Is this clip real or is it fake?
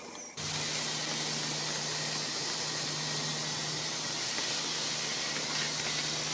real